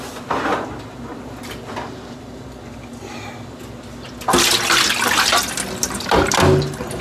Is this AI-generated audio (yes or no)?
no